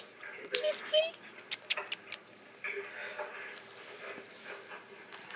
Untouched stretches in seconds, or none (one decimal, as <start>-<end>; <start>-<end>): 0.0-0.4; 1.0-5.4